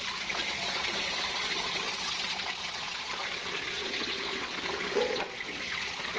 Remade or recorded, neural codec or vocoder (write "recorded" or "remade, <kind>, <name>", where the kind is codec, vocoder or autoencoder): remade, vocoder, Vocos